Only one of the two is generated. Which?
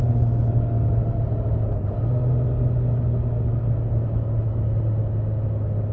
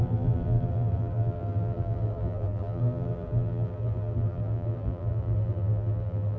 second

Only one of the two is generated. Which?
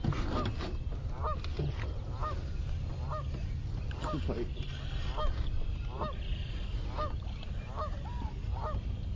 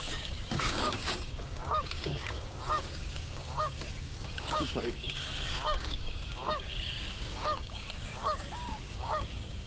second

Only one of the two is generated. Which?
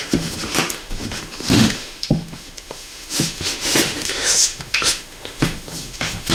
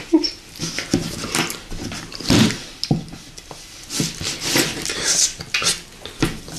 first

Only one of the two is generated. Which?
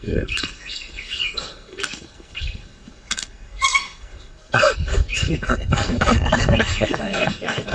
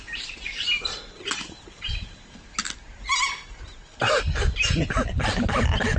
first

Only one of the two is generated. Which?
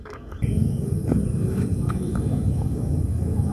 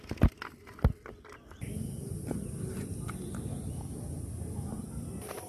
first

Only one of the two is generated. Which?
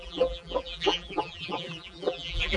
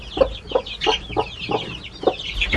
first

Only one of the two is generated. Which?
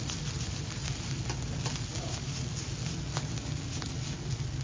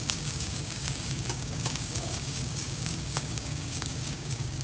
second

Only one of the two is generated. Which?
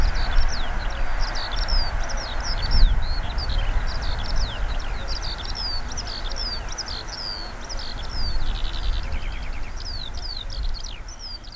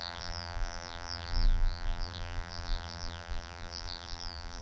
second